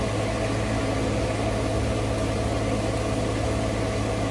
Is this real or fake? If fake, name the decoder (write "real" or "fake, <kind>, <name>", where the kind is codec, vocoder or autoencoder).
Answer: real